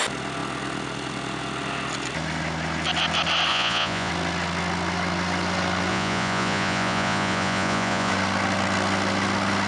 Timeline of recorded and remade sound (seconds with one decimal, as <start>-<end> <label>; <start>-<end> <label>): 0.0-3.5 recorded; 3.5-4.1 remade; 4.1-5.9 recorded; 5.9-8.1 remade; 8.1-9.7 recorded